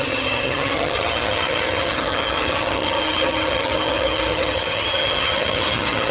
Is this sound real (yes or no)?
no